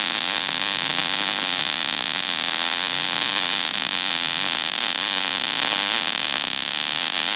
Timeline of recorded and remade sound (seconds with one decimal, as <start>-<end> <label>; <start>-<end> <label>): 0.0-7.4 recorded